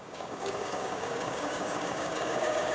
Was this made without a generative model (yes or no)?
no